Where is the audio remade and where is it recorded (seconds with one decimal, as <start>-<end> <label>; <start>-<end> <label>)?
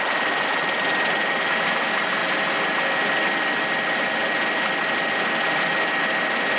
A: 0.0-6.6 recorded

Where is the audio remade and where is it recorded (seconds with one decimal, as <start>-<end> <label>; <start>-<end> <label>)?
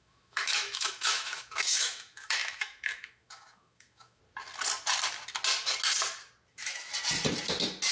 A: 0.0-4.2 remade; 4.2-6.5 recorded; 6.5-6.9 remade; 6.9-7.9 recorded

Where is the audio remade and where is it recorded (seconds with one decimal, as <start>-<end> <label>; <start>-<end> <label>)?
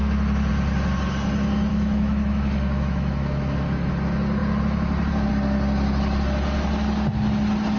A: 0.0-1.7 recorded; 1.7-3.9 remade; 3.9-7.8 recorded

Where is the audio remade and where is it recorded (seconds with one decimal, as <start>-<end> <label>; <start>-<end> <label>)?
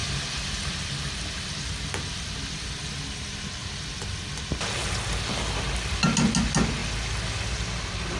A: 0.0-8.2 recorded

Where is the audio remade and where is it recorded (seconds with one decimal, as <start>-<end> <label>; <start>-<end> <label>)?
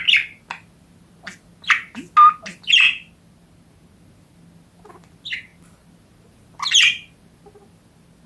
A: 0.0-8.3 recorded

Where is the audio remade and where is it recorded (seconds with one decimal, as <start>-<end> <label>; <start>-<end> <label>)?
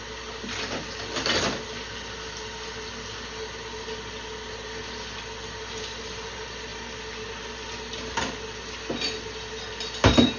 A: 0.0-10.4 recorded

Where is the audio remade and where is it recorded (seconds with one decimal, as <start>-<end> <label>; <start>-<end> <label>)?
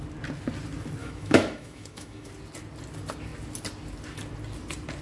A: 0.0-1.0 recorded; 1.0-2.3 remade; 2.3-5.0 recorded